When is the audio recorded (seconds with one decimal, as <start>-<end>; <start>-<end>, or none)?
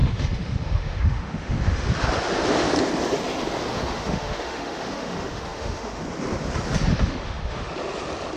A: 1.9-3.7; 6.0-6.9; 7.7-8.4